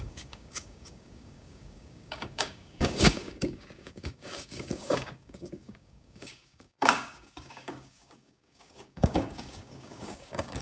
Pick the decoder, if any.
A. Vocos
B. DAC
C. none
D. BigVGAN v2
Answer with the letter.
B